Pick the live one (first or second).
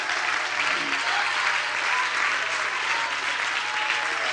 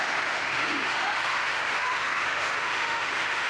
first